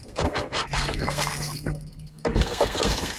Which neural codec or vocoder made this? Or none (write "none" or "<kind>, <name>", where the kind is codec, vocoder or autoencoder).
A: codec, SNAC